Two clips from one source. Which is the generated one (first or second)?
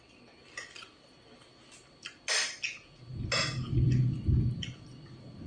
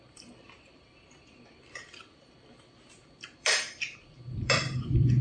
second